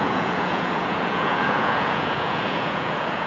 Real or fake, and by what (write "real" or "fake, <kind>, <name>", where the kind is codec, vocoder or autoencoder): fake, vocoder, Vocos